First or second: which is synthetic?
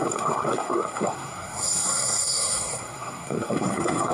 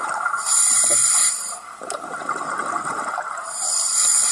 first